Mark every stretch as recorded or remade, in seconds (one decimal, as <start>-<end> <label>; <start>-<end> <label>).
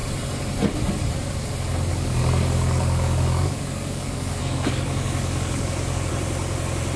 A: 0.0-1.9 recorded; 1.9-6.1 remade; 6.1-7.0 recorded